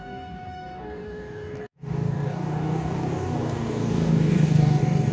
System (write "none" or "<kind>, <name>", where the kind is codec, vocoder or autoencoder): codec, DAC